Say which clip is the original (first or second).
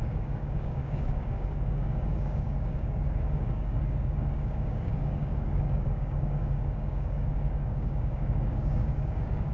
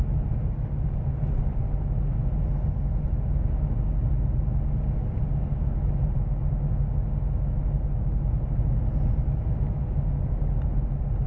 second